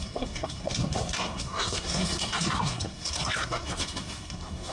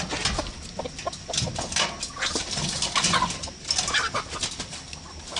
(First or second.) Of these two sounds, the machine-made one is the first